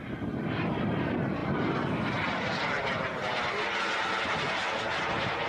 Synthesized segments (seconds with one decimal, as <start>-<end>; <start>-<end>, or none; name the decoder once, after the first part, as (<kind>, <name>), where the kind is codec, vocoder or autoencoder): 0.0-1.4 (vocoder, BigVGAN v2); 3.8-5.5

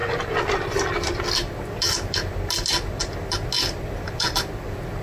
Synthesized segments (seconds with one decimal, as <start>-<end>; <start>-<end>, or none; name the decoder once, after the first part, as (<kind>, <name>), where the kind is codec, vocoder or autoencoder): none

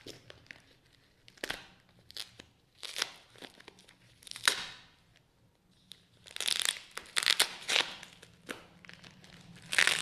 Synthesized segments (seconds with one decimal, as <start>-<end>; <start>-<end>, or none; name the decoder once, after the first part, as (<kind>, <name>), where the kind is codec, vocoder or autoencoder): none